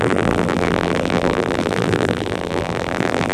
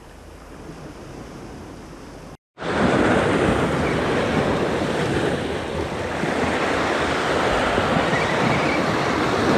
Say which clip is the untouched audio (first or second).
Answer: second